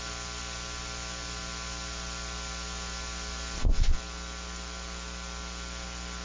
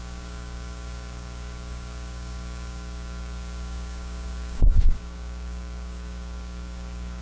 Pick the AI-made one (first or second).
second